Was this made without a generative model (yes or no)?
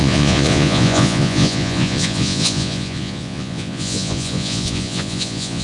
no